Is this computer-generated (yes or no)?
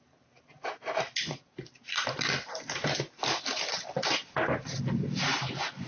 no